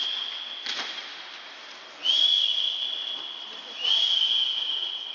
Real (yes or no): yes